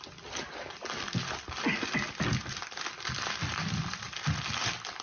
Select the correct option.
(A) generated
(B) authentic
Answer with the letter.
B